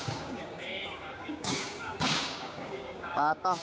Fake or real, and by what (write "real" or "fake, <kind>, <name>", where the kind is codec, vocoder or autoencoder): fake, codec, DAC